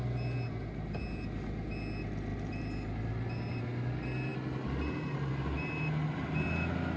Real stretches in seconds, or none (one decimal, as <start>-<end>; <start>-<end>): 0.0-7.0